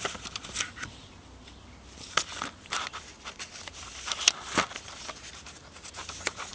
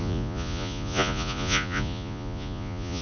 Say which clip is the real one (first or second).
first